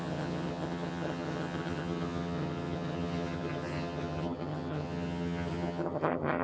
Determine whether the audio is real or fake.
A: fake